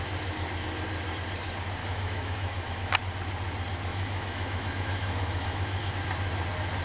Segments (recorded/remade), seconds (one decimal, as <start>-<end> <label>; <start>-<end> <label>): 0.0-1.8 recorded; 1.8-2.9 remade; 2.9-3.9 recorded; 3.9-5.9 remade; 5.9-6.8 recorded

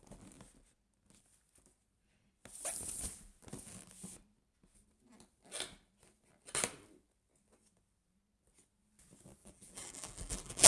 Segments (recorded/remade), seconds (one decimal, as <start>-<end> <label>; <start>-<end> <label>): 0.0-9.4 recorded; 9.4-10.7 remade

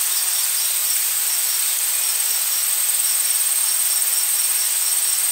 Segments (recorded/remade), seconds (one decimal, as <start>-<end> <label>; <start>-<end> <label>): 0.0-5.3 recorded